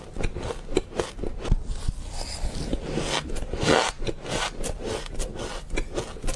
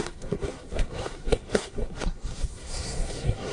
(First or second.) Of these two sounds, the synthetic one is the second